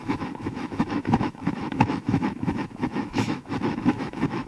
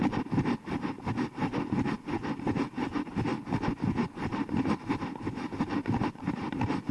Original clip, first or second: second